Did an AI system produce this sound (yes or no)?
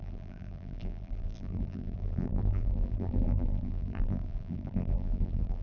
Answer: yes